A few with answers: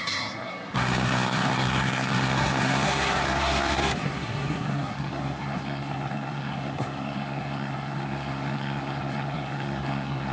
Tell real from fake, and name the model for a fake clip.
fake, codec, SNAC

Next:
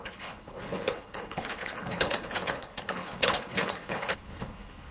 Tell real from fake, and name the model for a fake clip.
fake, codec, HILCodec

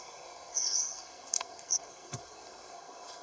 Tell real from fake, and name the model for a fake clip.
fake, codec, SNAC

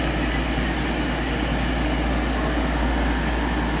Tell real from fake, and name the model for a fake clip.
real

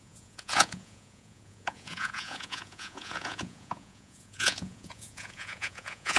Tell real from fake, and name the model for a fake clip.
fake, vocoder, Vocos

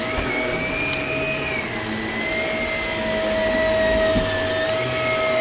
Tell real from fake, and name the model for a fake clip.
real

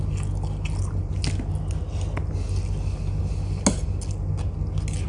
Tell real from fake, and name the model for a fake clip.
real